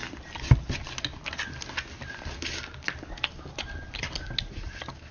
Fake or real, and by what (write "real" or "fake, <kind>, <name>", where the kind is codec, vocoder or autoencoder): real